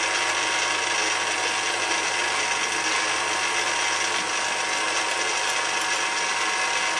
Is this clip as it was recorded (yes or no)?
yes